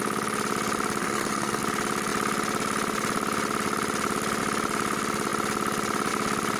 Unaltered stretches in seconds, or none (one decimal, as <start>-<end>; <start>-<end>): 0.0-1.0; 1.6-6.6